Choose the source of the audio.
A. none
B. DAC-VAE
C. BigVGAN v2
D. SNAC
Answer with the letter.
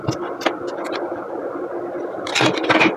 A